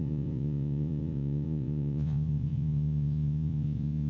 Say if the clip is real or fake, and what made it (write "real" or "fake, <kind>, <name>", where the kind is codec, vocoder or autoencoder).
fake, vocoder, Vocos